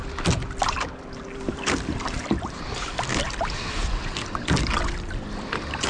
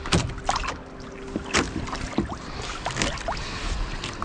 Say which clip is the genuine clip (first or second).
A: second